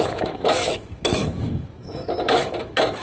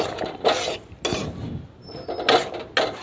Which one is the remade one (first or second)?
first